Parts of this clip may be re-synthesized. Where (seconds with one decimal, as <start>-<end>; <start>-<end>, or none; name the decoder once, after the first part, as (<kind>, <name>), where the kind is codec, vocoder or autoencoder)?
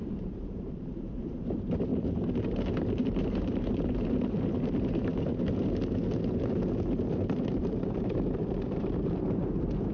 0.0-1.9 (vocoder, BigVGAN v2); 3.0-5.1; 7.6-9.9